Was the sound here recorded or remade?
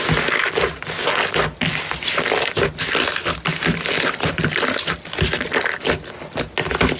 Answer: recorded